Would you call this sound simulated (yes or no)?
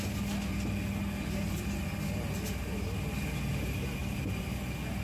no